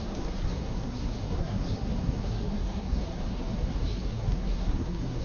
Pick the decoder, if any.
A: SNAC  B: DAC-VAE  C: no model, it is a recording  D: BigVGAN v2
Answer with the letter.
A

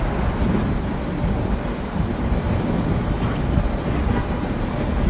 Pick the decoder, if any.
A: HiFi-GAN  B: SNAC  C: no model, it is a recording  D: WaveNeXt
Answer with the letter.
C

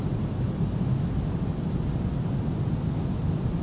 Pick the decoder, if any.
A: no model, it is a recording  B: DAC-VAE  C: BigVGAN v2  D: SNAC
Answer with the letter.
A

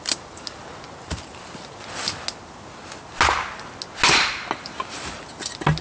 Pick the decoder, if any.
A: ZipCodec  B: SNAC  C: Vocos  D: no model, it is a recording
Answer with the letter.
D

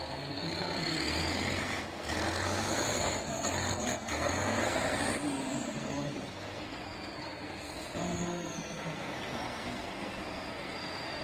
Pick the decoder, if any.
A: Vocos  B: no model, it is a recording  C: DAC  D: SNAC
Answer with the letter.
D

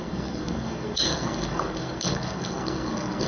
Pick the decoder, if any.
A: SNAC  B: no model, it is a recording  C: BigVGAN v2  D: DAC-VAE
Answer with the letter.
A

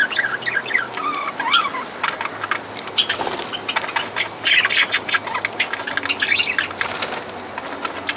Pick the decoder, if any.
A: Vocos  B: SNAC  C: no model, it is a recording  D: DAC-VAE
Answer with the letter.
C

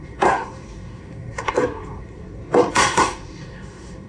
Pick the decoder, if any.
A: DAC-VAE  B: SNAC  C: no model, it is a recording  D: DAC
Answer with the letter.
B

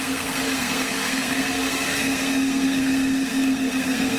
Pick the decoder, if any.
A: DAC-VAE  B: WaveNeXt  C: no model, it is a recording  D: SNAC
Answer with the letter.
D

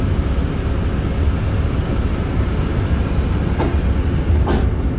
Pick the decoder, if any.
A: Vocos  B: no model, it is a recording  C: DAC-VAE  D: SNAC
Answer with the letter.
B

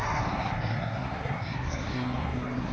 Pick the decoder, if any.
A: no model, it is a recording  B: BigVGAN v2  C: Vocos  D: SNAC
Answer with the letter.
D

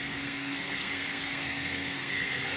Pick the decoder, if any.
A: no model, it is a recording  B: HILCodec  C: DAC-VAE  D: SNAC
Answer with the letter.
D